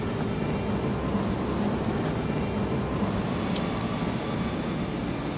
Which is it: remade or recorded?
recorded